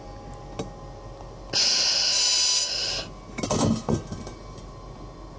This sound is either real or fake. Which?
real